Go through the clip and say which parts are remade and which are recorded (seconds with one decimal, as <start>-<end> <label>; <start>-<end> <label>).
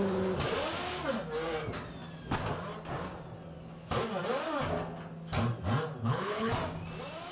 0.0-6.0 recorded; 6.0-6.5 remade; 6.5-7.3 recorded